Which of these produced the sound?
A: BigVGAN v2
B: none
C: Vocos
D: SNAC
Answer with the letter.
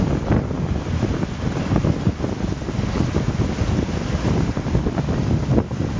B